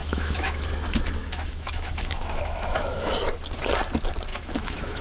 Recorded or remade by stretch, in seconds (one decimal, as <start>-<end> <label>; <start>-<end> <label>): 0.0-0.6 remade; 0.6-1.2 recorded; 1.2-3.1 remade; 3.1-4.3 recorded; 4.3-5.0 remade